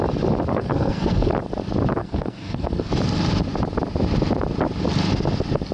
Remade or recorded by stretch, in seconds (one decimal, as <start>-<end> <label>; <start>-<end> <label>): 0.0-0.5 recorded; 0.5-1.3 remade; 1.3-2.0 recorded; 2.0-2.9 remade; 2.9-5.7 recorded